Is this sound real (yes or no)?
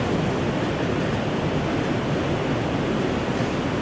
yes